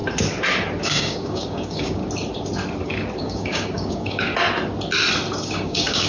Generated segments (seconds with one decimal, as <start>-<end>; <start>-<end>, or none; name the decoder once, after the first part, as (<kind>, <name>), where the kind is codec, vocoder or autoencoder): 0.8-2.0 (codec, DAC); 3.2-4.3; 5.4-6.1